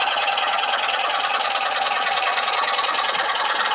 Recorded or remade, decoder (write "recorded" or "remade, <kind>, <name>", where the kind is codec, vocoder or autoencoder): remade, vocoder, Vocos